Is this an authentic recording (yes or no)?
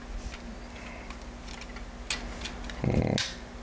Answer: yes